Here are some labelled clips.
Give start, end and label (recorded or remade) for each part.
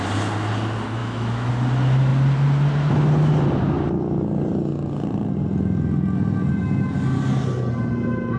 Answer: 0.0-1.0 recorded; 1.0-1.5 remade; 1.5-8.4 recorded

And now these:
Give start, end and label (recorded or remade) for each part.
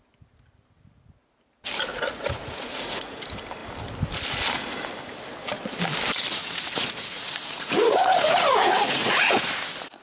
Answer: 0.0-1.9 recorded; 1.9-3.2 remade; 3.2-6.4 recorded; 6.4-9.4 remade; 9.4-10.0 recorded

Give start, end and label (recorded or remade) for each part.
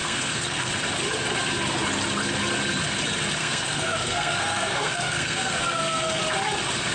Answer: 0.0-0.7 remade; 0.7-3.4 recorded; 3.4-6.2 remade; 6.2-6.9 recorded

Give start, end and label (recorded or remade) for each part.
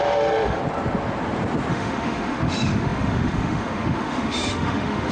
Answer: 0.0-0.6 remade; 0.6-1.7 recorded; 1.7-5.1 remade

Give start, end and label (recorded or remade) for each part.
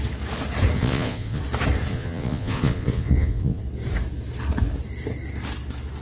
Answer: 0.0-0.8 recorded; 0.8-1.4 remade; 1.4-1.9 recorded; 1.9-3.6 remade; 3.6-6.0 recorded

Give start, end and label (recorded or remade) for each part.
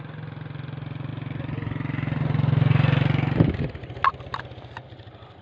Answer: 0.0-5.4 recorded